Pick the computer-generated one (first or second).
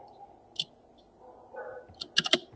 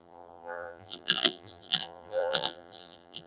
second